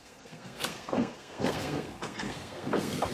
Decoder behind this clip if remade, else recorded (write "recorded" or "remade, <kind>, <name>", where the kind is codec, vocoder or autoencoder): remade, codec, SNAC